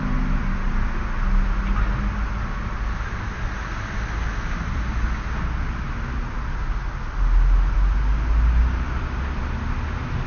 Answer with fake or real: real